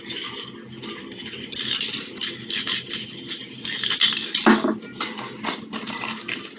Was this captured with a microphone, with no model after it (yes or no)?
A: yes